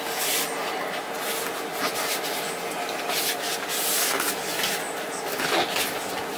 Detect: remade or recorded recorded